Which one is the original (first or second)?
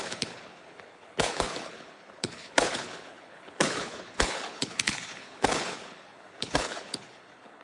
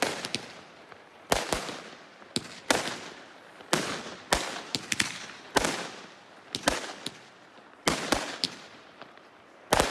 second